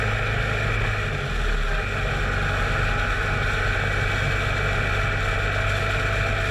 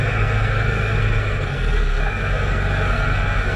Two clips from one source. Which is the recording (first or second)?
first